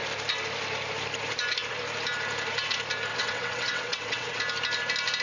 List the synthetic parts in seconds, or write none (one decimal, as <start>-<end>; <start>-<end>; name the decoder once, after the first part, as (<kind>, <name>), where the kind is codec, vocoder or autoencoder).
3.1-4.4 (vocoder, WaveNeXt)